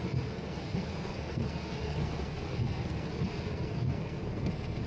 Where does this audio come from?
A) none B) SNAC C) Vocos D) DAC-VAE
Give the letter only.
B